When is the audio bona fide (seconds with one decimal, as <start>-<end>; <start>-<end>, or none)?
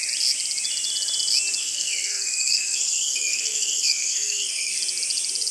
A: 0.0-1.6; 4.8-5.5